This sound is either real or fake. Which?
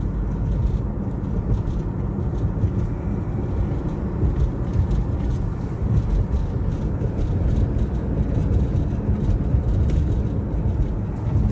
real